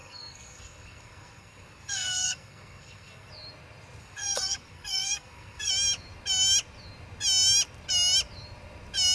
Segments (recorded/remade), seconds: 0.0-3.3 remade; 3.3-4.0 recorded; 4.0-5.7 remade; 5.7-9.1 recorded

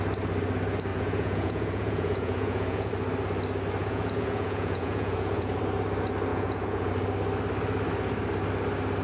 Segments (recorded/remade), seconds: 0.0-0.9 recorded; 0.9-2.9 remade; 2.9-3.8 recorded; 3.8-5.6 remade; 5.6-6.3 recorded; 6.3-6.9 remade; 6.9-9.0 recorded

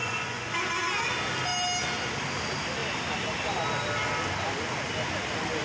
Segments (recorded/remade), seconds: 0.0-0.5 remade; 0.5-5.6 recorded

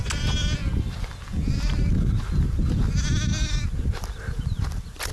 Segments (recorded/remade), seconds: 0.0-5.1 recorded

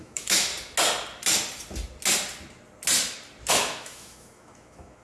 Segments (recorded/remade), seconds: 0.0-0.5 remade; 0.5-3.5 recorded; 3.5-5.0 remade

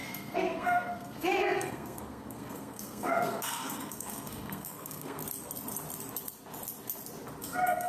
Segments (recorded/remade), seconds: 0.0-5.2 remade; 5.2-7.4 recorded; 7.4-7.9 remade

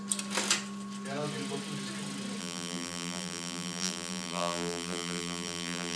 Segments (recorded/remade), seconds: 0.0-2.4 recorded; 2.4-6.0 remade

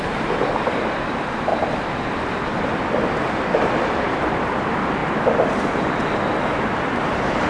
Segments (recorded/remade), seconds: 0.0-7.5 recorded